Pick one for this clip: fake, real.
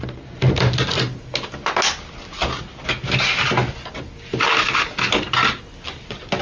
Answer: real